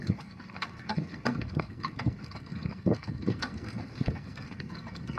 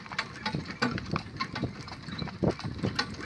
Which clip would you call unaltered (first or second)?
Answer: second